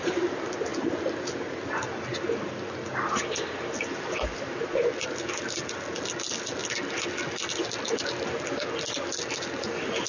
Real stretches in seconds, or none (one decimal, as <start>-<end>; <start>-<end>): 0.0-10.1